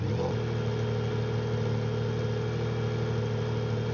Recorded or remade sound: recorded